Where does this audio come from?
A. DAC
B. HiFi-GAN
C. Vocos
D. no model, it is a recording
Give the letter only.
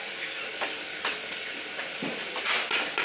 D